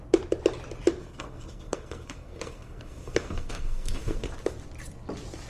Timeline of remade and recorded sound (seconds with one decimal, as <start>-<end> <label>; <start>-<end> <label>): 0.0-1.0 recorded; 1.0-4.3 remade; 4.3-5.5 recorded